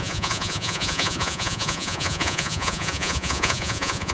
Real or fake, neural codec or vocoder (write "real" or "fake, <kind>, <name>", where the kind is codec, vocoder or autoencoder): fake, vocoder, Vocos